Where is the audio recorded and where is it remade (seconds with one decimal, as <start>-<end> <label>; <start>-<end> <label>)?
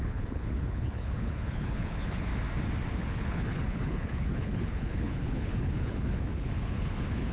0.0-2.3 remade; 2.3-2.9 recorded; 2.9-7.3 remade